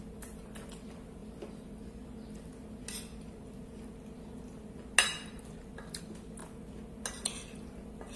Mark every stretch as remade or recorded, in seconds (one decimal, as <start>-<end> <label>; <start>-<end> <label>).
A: 0.0-8.2 recorded